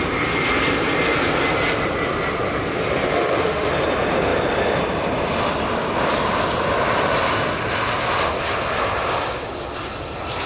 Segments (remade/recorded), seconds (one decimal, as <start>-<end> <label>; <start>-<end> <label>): 0.0-3.1 recorded; 3.1-3.7 remade; 3.7-10.5 recorded

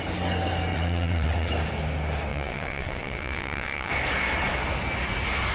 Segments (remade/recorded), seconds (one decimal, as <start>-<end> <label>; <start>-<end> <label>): 0.0-0.7 recorded; 0.7-1.5 remade; 1.5-2.3 recorded; 2.3-3.9 remade; 3.9-5.5 recorded

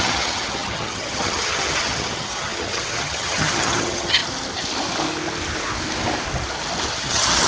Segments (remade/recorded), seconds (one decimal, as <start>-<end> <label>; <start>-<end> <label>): 0.0-4.2 remade; 4.2-6.9 recorded; 6.9-7.5 remade

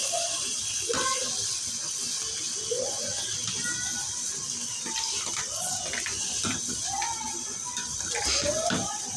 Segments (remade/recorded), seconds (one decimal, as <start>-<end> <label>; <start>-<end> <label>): 0.0-0.7 remade; 0.7-4.7 recorded; 4.7-5.3 remade; 5.3-9.2 recorded